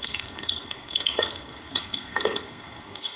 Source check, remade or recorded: remade